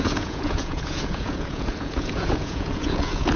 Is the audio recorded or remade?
remade